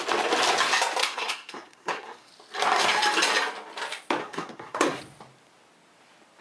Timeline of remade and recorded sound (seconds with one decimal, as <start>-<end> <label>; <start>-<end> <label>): 0.0-1.0 recorded; 1.0-2.3 remade; 2.3-4.2 recorded; 4.2-5.0 remade; 5.0-6.4 recorded